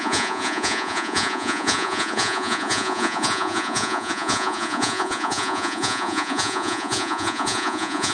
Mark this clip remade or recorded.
remade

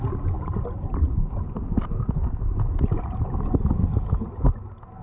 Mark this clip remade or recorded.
recorded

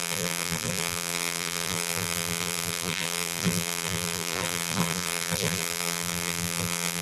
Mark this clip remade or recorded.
remade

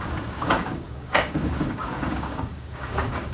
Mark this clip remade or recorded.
remade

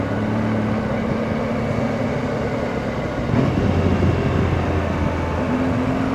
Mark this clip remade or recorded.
recorded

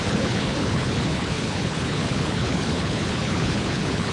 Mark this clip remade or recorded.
remade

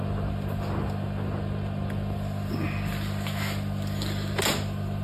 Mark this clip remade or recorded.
recorded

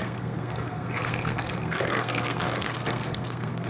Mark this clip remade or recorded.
remade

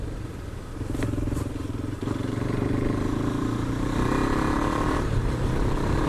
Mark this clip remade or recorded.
remade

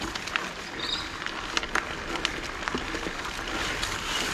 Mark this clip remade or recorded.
recorded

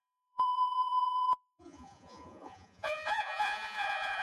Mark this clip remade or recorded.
remade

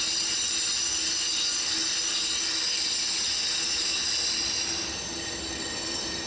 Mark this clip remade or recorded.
recorded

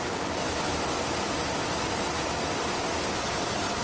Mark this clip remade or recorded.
recorded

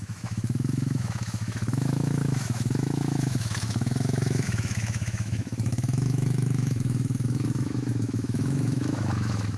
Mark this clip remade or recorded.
remade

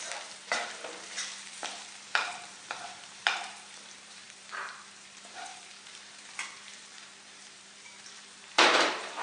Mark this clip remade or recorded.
remade